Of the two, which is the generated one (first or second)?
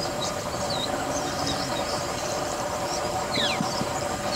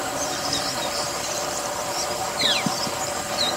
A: first